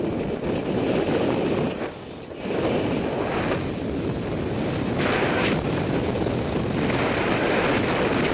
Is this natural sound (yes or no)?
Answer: yes